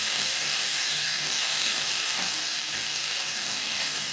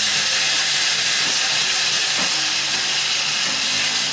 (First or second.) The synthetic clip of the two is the first